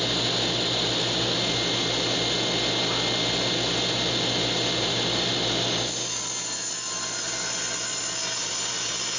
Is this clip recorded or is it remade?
recorded